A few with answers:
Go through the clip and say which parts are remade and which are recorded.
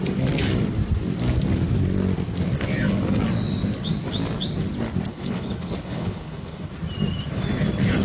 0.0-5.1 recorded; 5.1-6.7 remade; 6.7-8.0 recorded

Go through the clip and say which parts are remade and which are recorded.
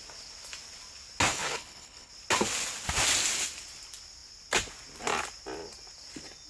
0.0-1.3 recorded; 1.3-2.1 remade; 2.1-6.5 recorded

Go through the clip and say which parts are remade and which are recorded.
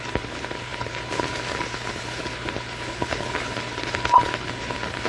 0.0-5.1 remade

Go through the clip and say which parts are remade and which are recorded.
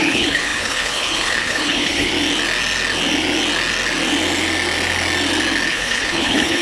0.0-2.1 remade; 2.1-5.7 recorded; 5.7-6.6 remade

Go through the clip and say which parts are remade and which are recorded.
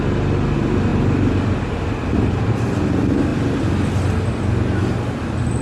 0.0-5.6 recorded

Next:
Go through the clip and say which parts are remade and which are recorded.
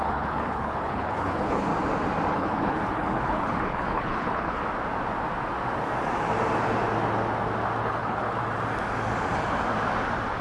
0.0-1.7 remade; 1.7-2.3 recorded; 2.3-4.6 remade; 4.6-7.8 recorded; 7.8-8.4 remade; 8.4-10.4 recorded